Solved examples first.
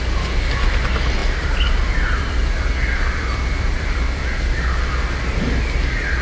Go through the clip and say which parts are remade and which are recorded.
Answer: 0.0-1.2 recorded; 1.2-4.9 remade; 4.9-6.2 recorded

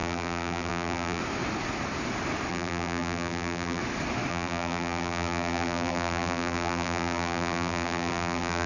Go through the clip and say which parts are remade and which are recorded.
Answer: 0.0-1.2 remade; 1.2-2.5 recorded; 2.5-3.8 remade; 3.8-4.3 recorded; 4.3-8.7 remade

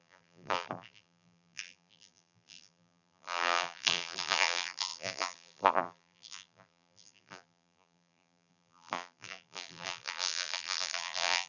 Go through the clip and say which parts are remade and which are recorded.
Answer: 0.0-11.5 remade

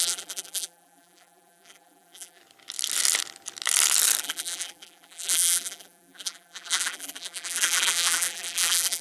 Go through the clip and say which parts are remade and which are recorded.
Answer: 0.0-2.4 remade; 2.4-4.2 recorded; 4.2-9.0 remade

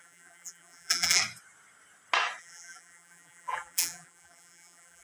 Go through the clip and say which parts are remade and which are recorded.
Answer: 0.0-1.2 remade; 1.2-2.4 recorded; 2.4-5.0 remade

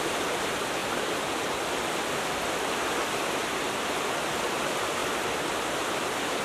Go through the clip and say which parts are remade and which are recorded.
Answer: 0.0-3.4 remade; 3.4-4.3 recorded; 4.3-5.0 remade; 5.0-5.6 recorded; 5.6-6.4 remade

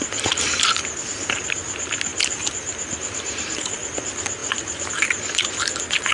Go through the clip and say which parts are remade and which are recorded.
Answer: 0.0-2.1 recorded; 2.1-3.7 remade; 3.7-4.4 recorded; 4.4-4.9 remade; 4.9-6.1 recorded